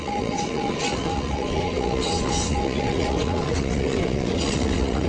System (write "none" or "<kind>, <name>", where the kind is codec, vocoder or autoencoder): vocoder, WaveNeXt